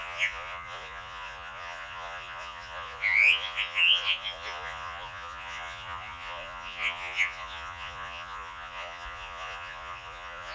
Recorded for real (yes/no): no